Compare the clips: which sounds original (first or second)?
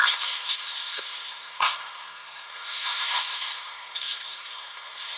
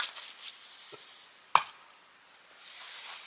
second